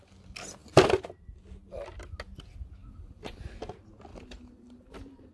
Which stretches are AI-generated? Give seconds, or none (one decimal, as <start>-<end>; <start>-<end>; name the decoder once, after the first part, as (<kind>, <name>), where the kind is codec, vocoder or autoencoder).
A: 2.8-3.4 (vocoder, BigVGAN v2); 4.1-5.3